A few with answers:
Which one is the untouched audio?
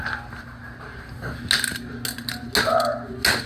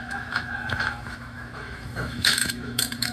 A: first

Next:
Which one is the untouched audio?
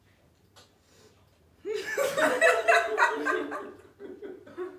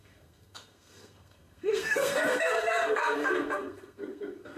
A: first